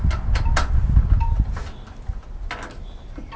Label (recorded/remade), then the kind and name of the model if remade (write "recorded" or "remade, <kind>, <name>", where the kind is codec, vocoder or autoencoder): recorded